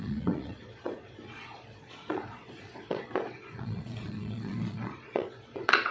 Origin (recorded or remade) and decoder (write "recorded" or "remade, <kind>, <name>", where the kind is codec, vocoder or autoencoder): remade, vocoder, Vocos